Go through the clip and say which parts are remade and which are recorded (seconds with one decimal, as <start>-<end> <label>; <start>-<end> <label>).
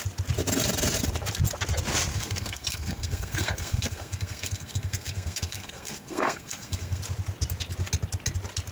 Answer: 0.0-2.1 recorded; 2.1-7.0 remade; 7.0-8.7 recorded